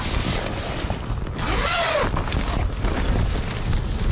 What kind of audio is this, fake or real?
real